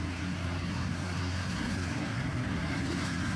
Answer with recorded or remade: remade